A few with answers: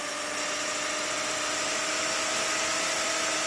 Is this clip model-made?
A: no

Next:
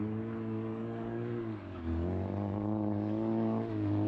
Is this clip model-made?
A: yes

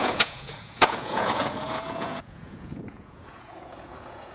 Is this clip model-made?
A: yes